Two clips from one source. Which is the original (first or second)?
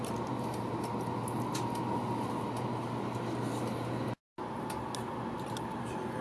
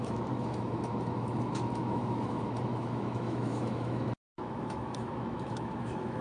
first